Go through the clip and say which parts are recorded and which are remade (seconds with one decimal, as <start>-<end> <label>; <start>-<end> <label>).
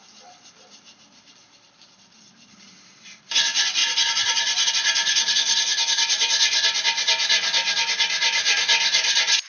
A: 0.0-3.8 recorded; 3.8-4.7 remade; 4.7-9.5 recorded